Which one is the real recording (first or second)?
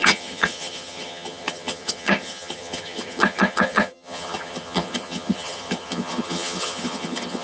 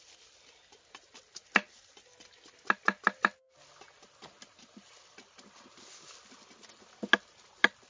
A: second